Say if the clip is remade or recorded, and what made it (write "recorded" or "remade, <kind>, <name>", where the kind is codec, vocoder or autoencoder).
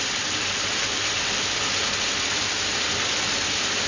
recorded